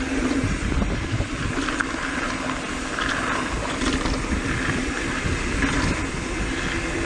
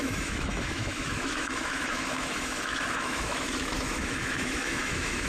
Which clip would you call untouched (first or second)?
first